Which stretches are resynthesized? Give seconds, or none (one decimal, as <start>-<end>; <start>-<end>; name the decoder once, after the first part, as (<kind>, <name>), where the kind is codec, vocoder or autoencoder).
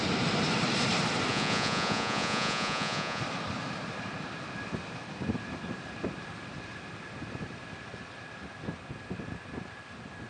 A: 1.3-3.2 (vocoder, Vocos)